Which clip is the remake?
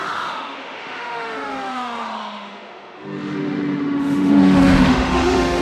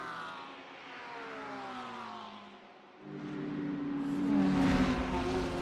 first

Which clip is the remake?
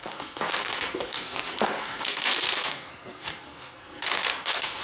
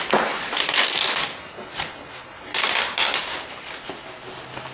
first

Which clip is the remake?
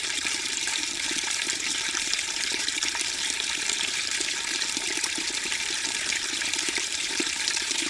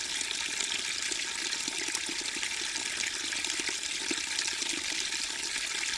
first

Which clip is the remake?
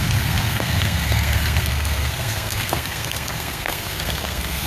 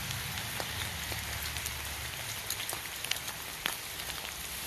first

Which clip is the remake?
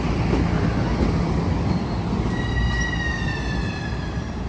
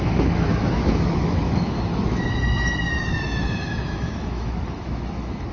second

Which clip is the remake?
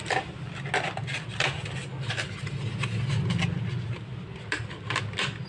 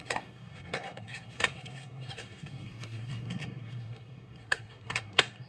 second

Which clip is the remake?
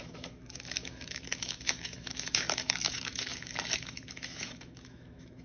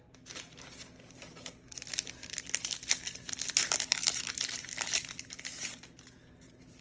first